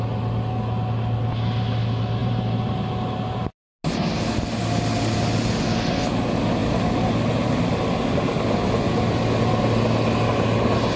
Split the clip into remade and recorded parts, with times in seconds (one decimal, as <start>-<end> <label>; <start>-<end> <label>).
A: 0.0-2.2 recorded; 2.2-2.8 remade; 2.8-6.6 recorded; 6.6-7.1 remade; 7.1-11.0 recorded

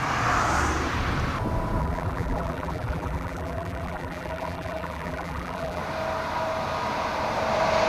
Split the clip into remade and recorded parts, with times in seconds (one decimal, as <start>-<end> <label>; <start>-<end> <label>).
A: 0.0-1.8 recorded; 1.8-5.8 remade; 5.8-7.9 recorded

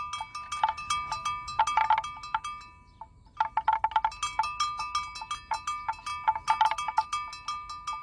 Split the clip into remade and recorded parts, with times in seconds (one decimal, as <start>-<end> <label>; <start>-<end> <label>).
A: 0.0-8.0 recorded

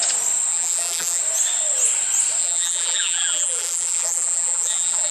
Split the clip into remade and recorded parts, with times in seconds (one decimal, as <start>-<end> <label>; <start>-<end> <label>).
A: 0.0-0.5 recorded; 0.5-1.2 remade; 1.2-2.4 recorded; 2.4-5.1 remade